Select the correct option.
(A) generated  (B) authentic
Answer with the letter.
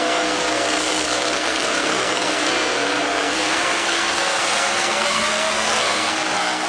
A